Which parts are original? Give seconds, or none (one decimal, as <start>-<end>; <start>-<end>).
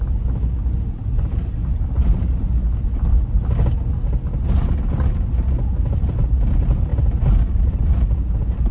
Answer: 0.0-6.9; 8.2-8.7